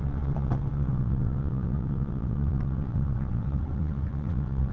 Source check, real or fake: fake